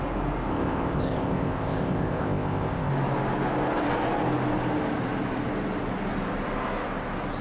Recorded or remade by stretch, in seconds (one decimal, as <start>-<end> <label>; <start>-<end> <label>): 0.0-0.5 recorded; 0.5-2.9 remade; 2.9-7.4 recorded